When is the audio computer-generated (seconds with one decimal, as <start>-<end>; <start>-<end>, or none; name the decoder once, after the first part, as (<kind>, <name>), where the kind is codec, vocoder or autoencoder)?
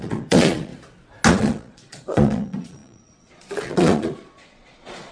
0.0-0.7 (vocoder, Vocos); 1.3-5.1